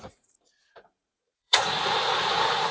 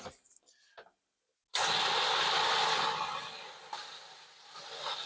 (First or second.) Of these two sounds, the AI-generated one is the first